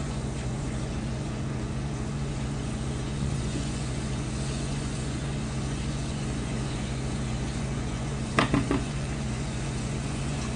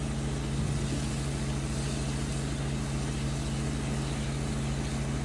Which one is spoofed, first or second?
first